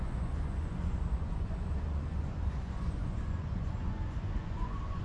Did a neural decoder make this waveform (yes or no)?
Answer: yes